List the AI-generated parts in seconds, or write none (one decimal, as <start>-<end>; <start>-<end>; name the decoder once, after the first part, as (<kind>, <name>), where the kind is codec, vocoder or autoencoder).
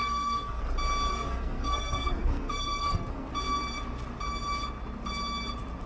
0.0-0.6 (codec, SNAC); 1.1-3.3